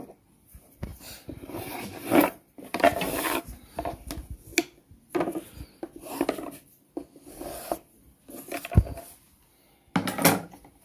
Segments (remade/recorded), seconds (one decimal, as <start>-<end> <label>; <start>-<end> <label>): 0.0-0.9 recorded; 0.9-3.9 remade; 3.9-10.8 recorded